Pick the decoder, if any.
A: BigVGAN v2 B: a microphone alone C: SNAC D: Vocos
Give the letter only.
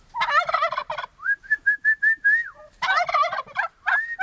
B